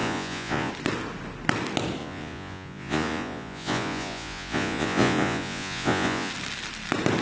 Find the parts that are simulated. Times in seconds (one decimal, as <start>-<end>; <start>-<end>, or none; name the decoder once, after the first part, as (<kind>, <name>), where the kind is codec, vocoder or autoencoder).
0.0-0.7 (vocoder, Vocos); 2.0-6.3